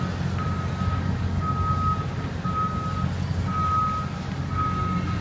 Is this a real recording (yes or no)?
yes